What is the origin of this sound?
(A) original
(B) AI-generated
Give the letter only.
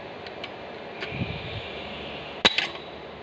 A